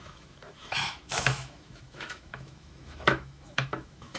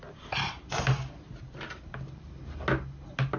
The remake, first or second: first